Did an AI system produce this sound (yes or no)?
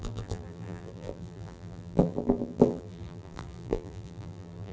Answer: yes